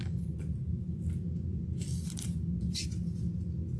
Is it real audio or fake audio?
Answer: real